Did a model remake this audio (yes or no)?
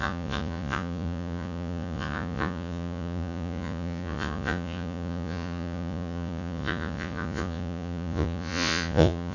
yes